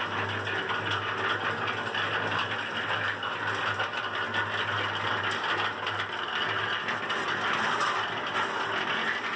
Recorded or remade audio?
recorded